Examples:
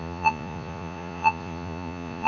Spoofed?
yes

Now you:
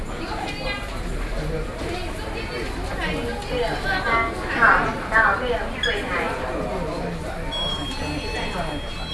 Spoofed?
no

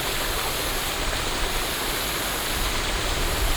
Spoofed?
no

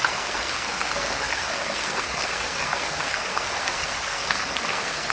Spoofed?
yes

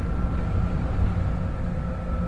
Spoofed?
no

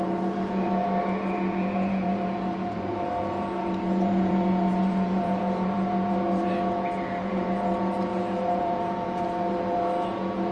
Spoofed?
yes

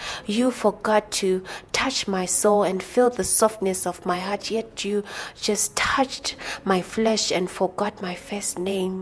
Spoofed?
yes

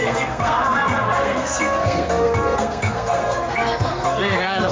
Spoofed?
yes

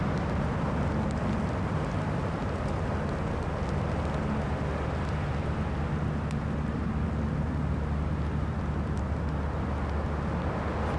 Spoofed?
no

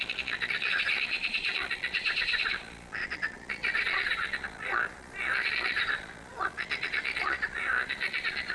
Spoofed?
yes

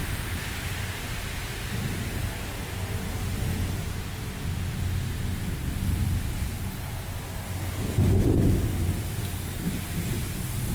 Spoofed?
no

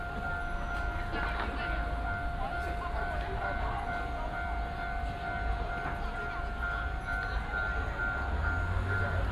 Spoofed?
no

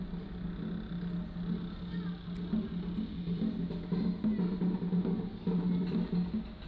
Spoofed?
no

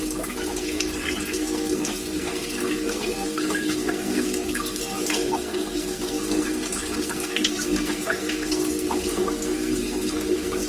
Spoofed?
yes